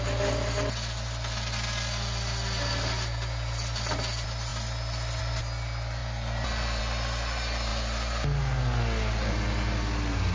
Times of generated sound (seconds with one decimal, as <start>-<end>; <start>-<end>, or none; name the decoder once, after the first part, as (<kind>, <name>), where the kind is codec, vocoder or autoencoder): none